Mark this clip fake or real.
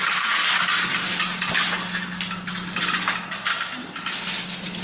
real